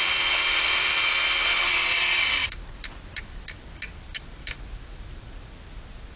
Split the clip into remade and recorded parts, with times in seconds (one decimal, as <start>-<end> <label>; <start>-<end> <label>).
0.0-6.2 recorded